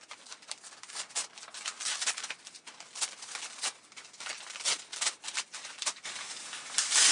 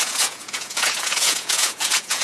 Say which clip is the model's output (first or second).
second